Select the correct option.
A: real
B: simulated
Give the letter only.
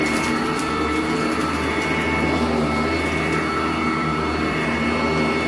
A